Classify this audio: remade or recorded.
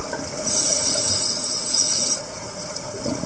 remade